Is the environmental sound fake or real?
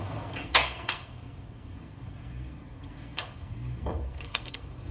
fake